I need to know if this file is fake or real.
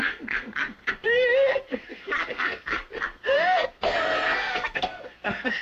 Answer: fake